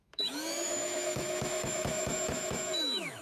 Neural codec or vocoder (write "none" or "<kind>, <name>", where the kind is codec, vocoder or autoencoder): autoencoder, DAC-VAE